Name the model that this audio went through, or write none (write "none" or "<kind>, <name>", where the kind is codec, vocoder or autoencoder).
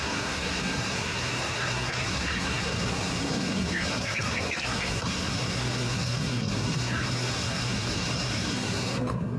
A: codec, SNAC